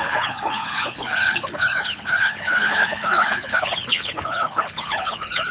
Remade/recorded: remade